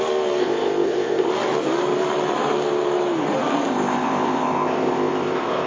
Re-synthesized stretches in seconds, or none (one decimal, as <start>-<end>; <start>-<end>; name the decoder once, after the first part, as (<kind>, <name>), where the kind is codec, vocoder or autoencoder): 0.4-1.3 (codec, ZipCodec); 3.7-5.7